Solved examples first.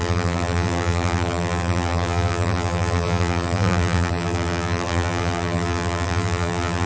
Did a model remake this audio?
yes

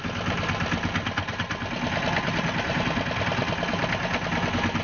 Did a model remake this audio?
no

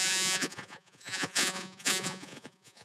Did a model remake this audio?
yes